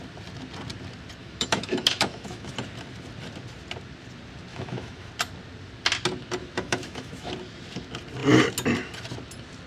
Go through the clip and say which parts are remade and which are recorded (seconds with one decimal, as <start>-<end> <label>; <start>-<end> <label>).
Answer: 0.0-1.2 recorded; 1.2-2.5 remade; 2.5-4.5 recorded; 4.5-5.1 remade; 5.1-6.4 recorded; 6.4-7.3 remade; 7.3-9.7 recorded